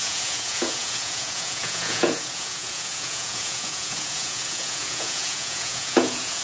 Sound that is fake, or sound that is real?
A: fake